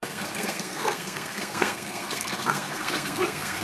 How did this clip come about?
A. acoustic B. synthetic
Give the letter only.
B